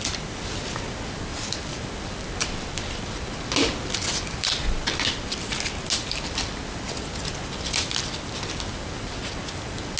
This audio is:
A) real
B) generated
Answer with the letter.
A